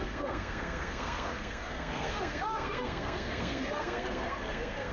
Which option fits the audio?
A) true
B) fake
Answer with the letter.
B